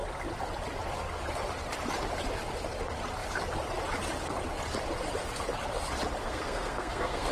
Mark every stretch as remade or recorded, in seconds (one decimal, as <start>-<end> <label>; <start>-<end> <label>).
0.0-6.2 recorded; 6.2-7.3 remade